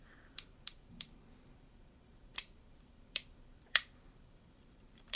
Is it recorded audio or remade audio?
remade